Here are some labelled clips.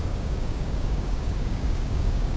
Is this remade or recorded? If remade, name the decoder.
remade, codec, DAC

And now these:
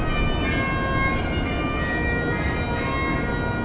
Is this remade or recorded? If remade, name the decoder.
recorded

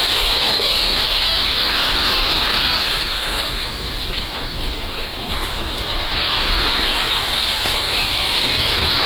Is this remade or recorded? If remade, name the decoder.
remade, codec, DAC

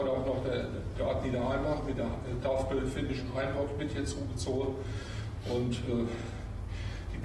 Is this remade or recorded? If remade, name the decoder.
recorded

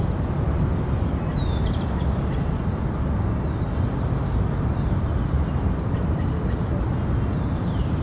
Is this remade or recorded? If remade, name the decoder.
recorded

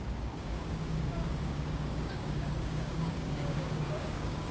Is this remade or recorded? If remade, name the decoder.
remade, codec, DAC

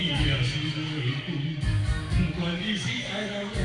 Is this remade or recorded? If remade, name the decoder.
remade, codec, DAC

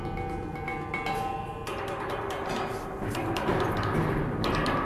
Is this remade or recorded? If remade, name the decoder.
recorded